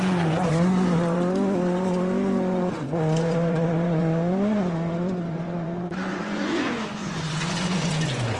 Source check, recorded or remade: remade